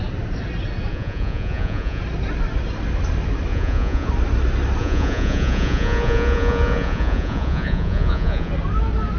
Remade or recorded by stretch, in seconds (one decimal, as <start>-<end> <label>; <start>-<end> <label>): 0.0-0.9 recorded; 0.9-2.0 remade; 2.0-3.5 recorded; 3.5-4.1 remade; 4.1-4.8 recorded; 4.8-8.5 remade; 8.5-9.2 recorded